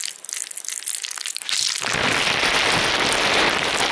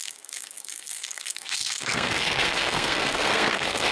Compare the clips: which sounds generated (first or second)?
second